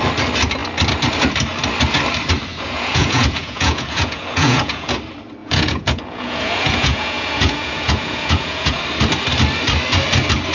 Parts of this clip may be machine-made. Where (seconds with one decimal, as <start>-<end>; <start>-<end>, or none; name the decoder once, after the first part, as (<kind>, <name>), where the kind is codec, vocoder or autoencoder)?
2.5-4.9 (vocoder, Vocos); 5.4-8.8